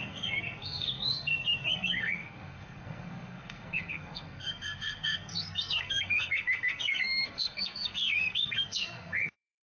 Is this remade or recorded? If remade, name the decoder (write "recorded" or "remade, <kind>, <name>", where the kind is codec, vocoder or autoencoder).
remade, codec, SNAC